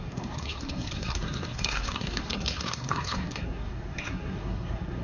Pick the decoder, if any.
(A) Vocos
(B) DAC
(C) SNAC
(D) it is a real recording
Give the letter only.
C